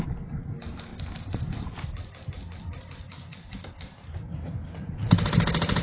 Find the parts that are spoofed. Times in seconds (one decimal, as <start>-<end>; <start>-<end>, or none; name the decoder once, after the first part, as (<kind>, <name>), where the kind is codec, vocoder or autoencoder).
0.9-1.9 (vocoder, BigVGAN v2)